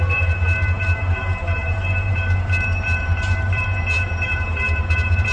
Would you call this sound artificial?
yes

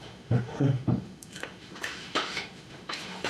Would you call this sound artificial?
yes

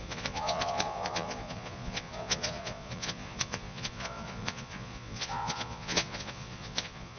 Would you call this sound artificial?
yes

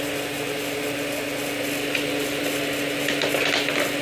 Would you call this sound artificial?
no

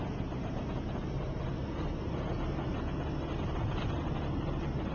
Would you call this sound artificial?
no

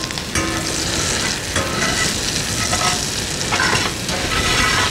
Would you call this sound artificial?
no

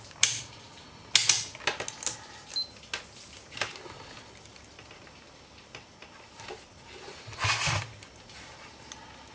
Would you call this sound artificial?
no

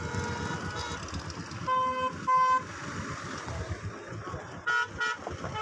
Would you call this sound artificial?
no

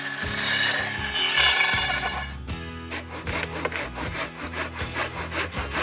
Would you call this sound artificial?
no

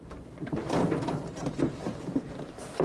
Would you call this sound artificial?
yes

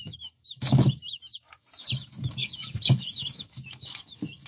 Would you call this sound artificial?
yes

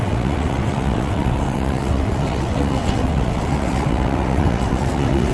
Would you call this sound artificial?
yes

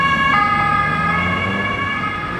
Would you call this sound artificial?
no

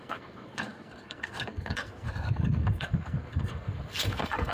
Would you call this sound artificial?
yes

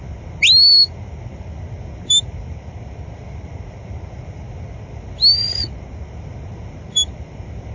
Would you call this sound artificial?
no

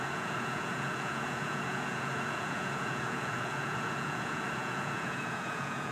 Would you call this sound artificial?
yes